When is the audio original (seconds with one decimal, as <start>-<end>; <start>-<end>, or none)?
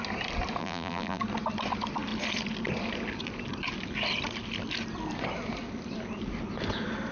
0.0-0.6; 1.2-7.1